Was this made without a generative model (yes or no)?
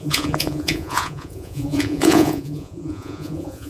no